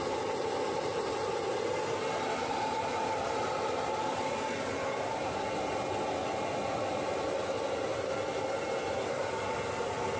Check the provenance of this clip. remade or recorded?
recorded